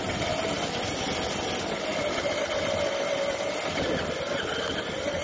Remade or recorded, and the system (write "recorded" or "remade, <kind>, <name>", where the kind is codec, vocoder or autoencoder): recorded